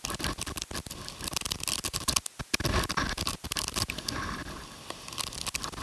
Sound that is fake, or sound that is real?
real